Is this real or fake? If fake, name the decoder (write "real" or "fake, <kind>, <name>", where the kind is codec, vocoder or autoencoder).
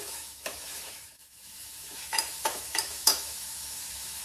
fake, autoencoder, DAC-VAE